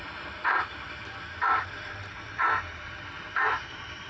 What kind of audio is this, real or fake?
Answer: fake